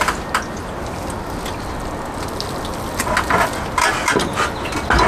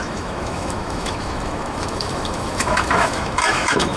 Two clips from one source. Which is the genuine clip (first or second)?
first